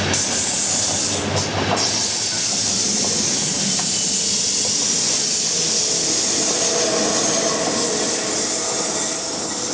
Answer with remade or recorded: recorded